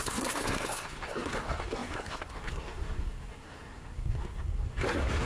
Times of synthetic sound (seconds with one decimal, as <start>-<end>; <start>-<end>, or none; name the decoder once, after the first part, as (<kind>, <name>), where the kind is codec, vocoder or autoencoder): 0.0-5.3 (codec, SNAC)